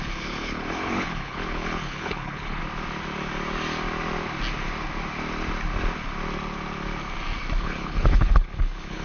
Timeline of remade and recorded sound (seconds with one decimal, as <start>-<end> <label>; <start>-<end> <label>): 0.0-2.6 remade; 2.6-7.6 recorded; 7.6-9.0 remade